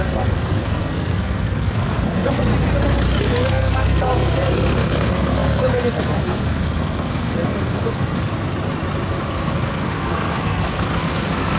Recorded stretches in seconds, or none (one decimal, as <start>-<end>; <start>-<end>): 2.5-3.2; 8.3-9.3

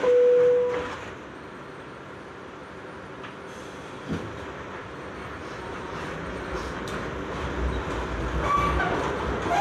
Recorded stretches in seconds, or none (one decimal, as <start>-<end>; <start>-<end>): 0.0-2.6; 3.4-9.6

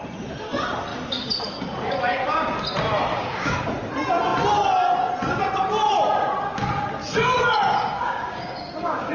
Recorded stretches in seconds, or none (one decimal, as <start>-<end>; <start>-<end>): 0.0-3.1; 3.7-7.7

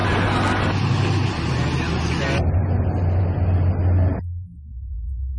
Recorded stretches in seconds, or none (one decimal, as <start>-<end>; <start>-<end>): 0.0-4.7

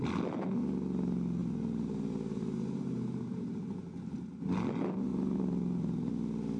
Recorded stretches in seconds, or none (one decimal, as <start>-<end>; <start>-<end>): 0.0-1.4; 3.9-5.1; 6.1-6.6

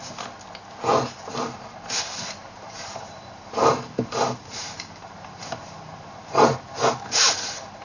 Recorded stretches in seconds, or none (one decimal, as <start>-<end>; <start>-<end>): 0.0-2.4; 6.5-7.8

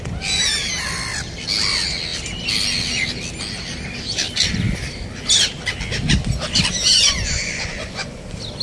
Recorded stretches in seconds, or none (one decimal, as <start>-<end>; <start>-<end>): 0.0-6.9; 8.2-8.6